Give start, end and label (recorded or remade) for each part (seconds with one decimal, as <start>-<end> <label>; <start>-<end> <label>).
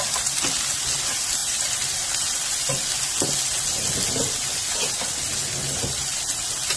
0.0-6.8 recorded